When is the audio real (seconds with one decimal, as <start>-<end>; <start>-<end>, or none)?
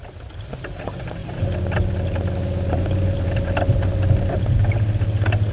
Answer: 0.0-5.5